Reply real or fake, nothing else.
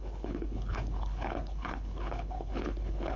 fake